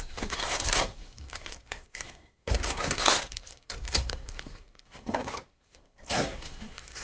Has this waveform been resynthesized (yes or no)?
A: yes